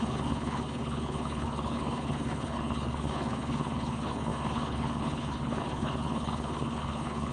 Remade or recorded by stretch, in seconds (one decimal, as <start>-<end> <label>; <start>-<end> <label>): 0.0-7.3 remade